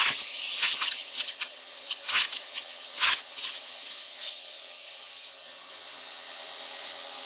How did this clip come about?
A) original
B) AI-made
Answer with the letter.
B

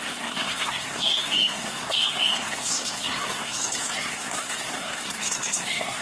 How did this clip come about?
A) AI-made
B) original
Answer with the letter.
A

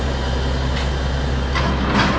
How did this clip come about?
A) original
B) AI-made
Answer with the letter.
A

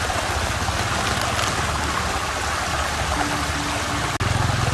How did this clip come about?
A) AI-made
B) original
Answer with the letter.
B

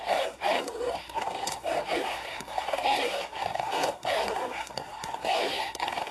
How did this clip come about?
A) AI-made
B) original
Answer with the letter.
A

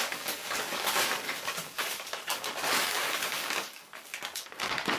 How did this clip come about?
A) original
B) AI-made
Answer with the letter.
B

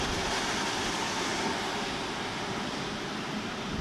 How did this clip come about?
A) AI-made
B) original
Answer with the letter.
B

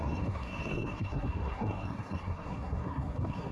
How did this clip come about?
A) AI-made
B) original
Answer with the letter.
A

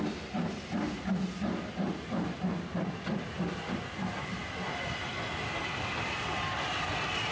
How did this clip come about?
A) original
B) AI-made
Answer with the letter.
A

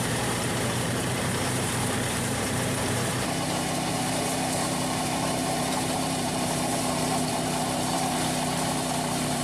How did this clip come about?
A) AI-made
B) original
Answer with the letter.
A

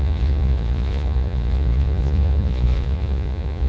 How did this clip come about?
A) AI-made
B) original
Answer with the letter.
A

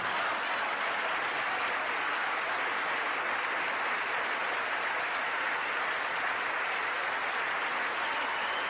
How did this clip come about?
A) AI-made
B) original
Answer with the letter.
B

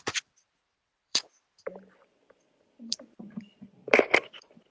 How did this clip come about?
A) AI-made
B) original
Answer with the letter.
A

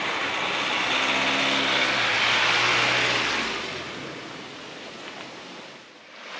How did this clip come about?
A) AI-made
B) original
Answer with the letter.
B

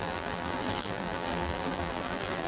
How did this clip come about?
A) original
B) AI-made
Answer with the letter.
B